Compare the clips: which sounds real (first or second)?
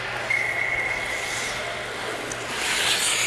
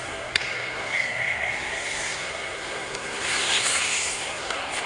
first